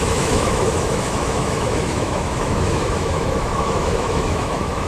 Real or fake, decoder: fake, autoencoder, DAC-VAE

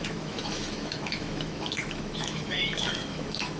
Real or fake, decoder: fake, autoencoder, DAC-VAE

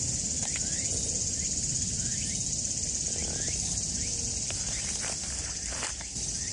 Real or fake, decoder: real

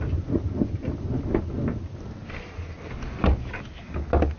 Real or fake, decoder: real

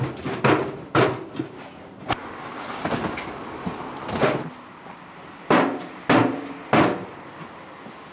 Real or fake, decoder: real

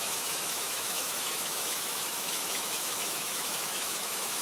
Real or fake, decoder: fake, autoencoder, DAC-VAE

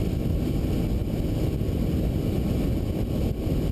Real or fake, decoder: real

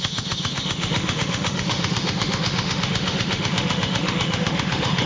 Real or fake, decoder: fake, autoencoder, DAC-VAE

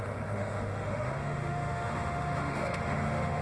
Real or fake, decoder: fake, autoencoder, DAC-VAE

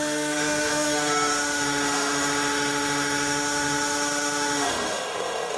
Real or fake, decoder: fake, autoencoder, DAC-VAE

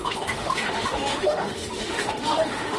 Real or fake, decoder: fake, autoencoder, DAC-VAE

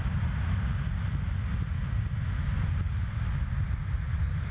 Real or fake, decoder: real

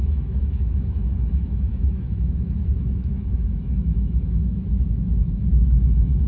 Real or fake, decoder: fake, autoencoder, DAC-VAE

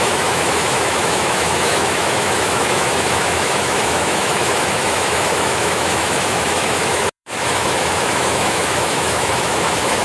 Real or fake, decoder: fake, autoencoder, DAC-VAE